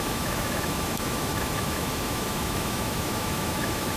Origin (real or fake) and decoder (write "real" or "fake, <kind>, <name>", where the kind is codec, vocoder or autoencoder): fake, autoencoder, DAC-VAE